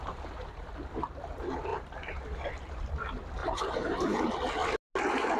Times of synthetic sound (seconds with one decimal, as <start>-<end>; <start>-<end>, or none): 0.0-0.7; 1.7-2.8; 3.4-4.3